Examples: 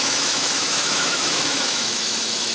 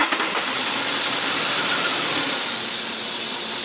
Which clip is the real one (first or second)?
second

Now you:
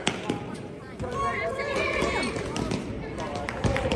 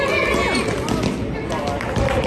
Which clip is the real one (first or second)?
second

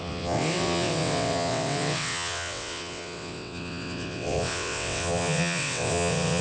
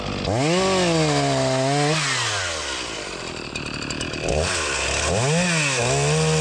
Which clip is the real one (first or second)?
second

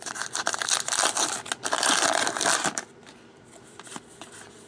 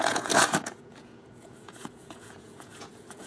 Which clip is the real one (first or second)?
first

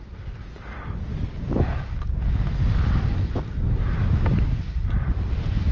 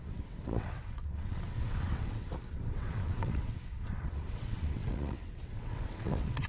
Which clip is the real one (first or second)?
first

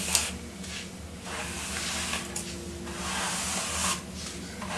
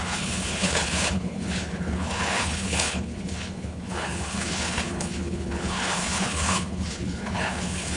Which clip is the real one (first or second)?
first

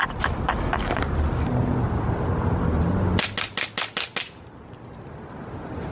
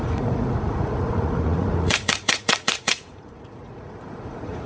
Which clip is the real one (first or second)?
first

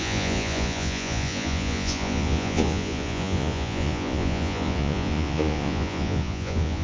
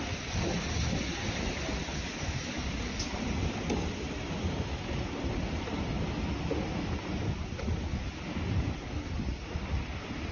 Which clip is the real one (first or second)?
second